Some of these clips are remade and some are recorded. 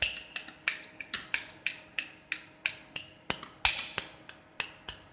recorded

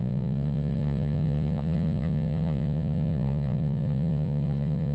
remade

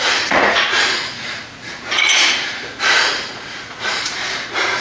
remade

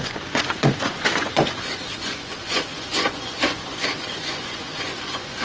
remade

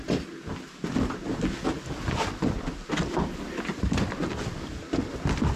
recorded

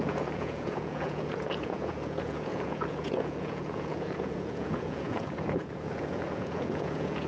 remade